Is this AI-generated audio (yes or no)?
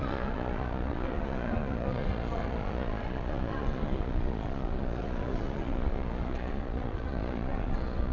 yes